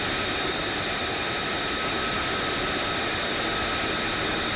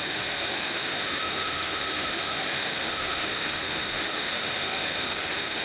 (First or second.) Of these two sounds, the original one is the first